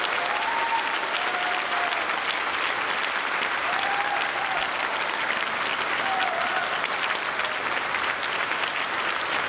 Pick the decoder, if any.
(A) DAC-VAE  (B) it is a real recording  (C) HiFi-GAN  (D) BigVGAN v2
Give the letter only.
D